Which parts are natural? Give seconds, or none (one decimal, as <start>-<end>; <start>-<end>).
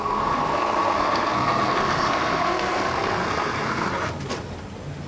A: 3.9-5.1